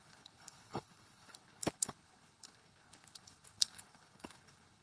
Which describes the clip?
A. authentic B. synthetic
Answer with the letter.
B